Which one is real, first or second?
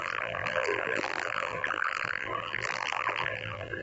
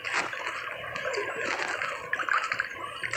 second